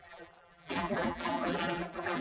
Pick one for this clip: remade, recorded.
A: remade